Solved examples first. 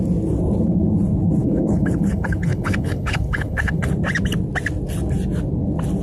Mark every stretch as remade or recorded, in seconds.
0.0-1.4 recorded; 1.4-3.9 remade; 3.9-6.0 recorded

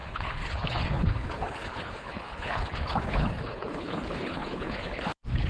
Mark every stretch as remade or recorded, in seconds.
0.0-5.5 remade

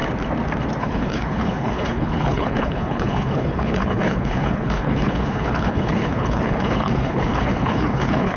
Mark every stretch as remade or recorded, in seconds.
0.0-0.8 recorded; 0.8-8.4 remade

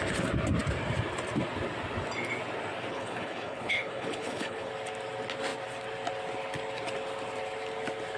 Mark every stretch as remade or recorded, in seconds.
0.0-2.9 recorded; 2.9-4.7 remade; 4.7-8.2 recorded

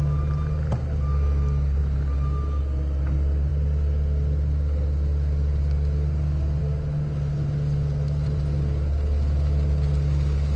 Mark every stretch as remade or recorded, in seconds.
0.0-10.6 recorded